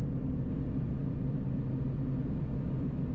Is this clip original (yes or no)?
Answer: yes